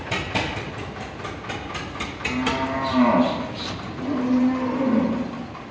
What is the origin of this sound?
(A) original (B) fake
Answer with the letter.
A